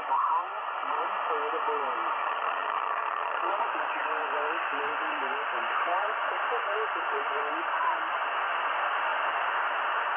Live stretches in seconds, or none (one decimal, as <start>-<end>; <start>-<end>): 0.0-2.2; 3.5-10.2